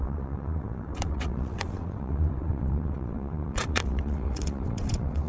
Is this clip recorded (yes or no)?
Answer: no